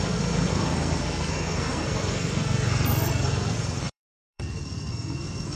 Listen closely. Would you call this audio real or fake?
fake